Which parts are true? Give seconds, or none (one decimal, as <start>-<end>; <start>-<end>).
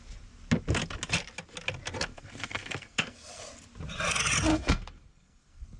0.0-2.1; 3.4-4.5